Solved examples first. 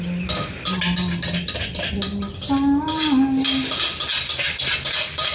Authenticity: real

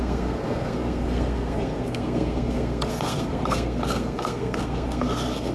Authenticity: fake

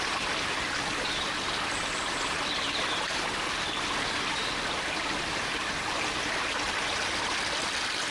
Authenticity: real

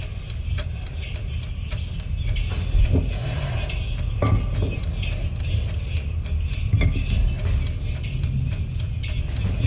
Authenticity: real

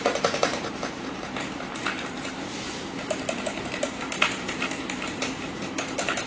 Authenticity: fake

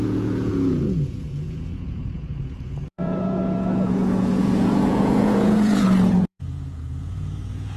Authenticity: fake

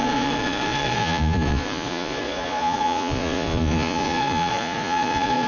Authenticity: fake